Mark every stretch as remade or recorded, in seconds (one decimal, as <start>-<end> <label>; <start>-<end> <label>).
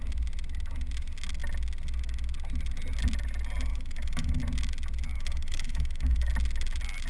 0.0-3.7 recorded; 3.7-4.4 remade; 4.4-5.1 recorded; 5.1-6.3 remade; 6.3-7.1 recorded